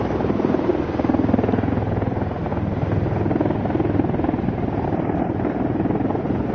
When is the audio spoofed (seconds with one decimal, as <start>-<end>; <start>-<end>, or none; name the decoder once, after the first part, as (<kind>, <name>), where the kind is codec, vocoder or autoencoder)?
0.0-0.7 (vocoder, BigVGAN v2); 1.7-2.5